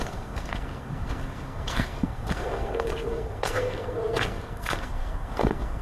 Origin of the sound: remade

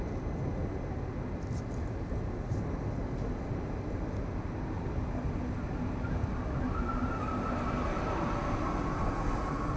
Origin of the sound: recorded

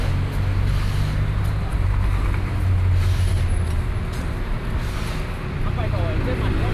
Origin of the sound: recorded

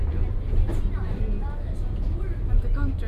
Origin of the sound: recorded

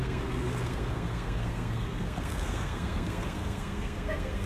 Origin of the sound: remade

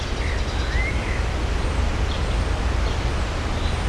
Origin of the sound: recorded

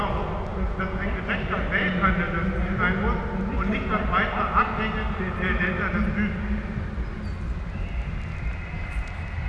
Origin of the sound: recorded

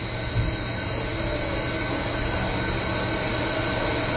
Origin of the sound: recorded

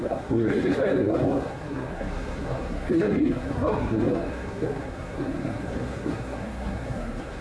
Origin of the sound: remade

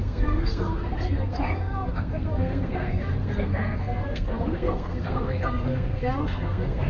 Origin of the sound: remade